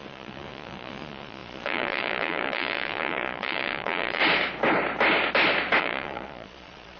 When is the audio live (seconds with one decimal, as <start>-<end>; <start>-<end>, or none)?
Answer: 4.2-5.8